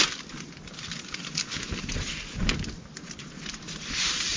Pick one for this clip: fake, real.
real